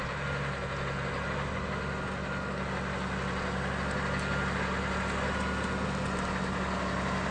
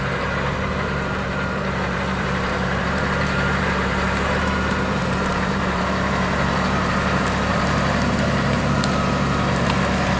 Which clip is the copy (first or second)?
second